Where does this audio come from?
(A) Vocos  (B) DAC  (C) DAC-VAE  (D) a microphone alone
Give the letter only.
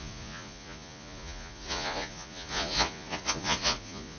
A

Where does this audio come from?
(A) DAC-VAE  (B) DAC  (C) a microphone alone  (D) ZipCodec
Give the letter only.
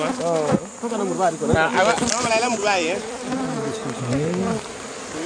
C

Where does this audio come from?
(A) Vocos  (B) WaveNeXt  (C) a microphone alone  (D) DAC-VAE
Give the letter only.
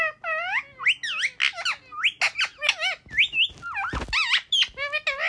C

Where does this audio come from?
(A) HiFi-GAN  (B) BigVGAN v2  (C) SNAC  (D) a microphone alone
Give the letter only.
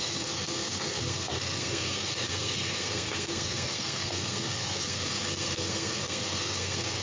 C